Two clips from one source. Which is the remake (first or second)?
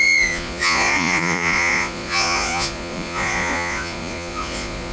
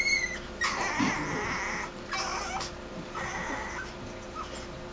first